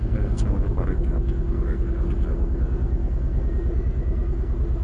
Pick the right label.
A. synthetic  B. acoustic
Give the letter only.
A